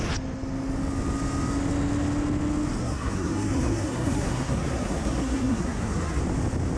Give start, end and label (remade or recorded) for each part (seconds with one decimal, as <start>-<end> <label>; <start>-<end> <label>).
0.0-2.8 recorded; 2.8-6.2 remade; 6.2-6.8 recorded